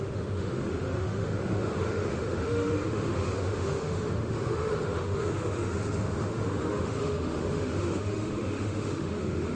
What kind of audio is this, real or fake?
fake